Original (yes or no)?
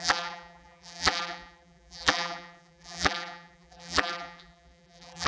no